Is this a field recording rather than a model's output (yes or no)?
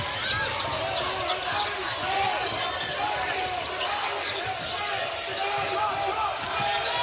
yes